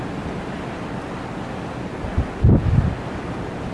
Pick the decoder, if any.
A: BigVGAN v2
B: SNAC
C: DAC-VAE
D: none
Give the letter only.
D